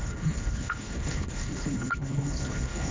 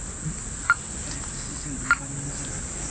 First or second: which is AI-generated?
first